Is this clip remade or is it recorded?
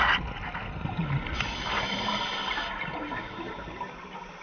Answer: recorded